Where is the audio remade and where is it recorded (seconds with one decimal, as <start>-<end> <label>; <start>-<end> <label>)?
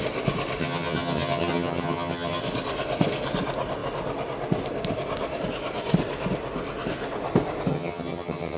0.0-0.6 recorded; 0.6-2.4 remade; 2.4-7.7 recorded; 7.7-8.6 remade